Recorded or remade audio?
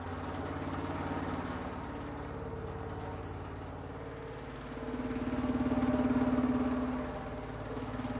recorded